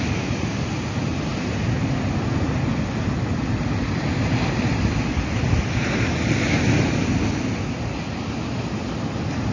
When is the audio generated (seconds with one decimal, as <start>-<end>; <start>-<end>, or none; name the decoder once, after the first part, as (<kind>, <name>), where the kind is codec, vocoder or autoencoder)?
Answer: none